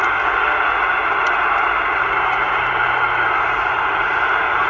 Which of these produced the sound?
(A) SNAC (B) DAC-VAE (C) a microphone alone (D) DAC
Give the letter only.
C